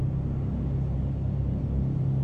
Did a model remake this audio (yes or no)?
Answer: no